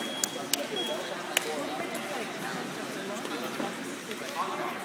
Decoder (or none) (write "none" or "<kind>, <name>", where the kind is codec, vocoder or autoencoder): none